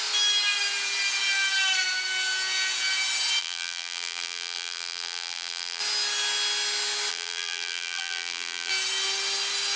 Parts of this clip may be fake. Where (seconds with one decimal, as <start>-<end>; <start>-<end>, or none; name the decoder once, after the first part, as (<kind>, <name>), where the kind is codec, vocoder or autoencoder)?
3.4-5.8 (vocoder, BigVGAN v2); 7.1-8.7